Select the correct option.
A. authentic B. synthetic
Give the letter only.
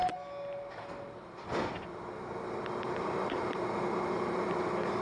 B